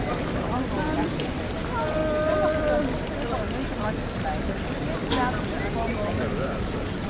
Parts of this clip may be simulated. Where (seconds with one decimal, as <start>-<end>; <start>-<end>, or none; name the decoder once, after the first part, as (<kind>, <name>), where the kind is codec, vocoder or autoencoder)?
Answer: 0.0-2.0 (vocoder, BigVGAN v2); 5.7-7.1